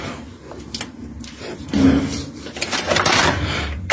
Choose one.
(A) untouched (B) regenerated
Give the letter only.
A